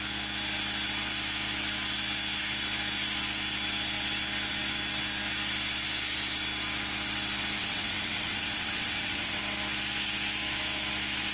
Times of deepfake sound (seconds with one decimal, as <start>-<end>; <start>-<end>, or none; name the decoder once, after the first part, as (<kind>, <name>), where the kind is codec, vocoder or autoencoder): 7.6-9.4 (vocoder, WaveNeXt)

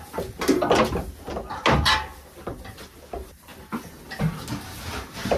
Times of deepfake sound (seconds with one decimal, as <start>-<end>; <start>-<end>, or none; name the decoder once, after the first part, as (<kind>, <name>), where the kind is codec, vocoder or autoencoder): none

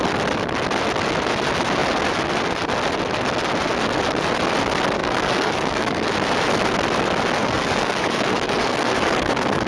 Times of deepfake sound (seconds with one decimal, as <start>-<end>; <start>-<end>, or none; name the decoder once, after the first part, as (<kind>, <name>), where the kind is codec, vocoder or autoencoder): 5.0-6.1 (codec, DAC); 7.4-9.7

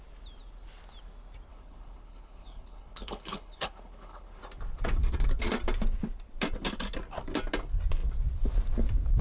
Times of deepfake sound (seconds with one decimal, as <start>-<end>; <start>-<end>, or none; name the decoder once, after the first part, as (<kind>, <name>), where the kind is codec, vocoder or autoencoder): 1.5-4.4 (codec, HILCodec)